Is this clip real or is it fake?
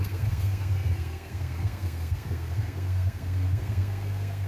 fake